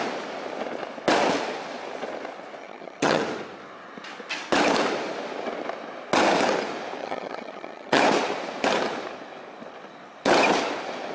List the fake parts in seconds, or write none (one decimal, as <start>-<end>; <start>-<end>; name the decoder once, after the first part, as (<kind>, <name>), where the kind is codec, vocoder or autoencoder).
2.6-3.2 (vocoder, HiFi-GAN); 7.0-8.0